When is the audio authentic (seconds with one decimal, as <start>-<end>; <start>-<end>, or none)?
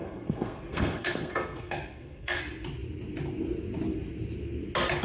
2.4-5.0